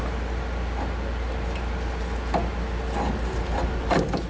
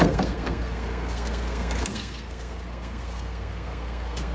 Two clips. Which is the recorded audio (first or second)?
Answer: first